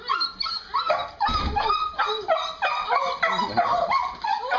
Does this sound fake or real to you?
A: real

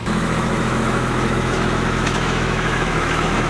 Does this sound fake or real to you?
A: fake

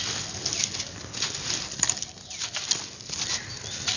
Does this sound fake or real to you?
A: real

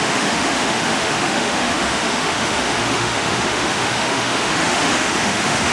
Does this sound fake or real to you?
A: fake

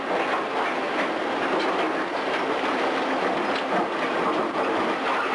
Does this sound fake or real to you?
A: real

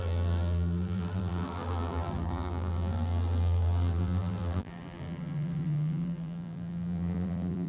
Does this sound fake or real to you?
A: fake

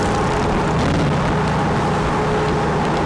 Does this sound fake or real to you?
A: real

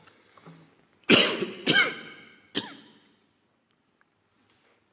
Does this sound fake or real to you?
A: real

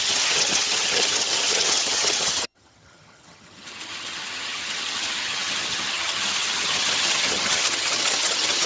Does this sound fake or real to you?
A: fake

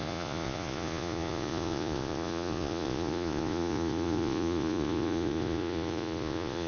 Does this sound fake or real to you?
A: fake